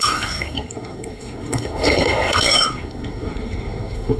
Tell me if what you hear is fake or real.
fake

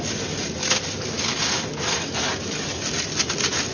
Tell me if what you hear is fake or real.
real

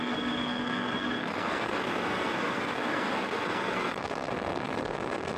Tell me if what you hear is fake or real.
fake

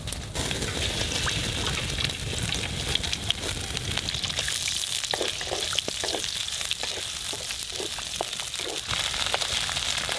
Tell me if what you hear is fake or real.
real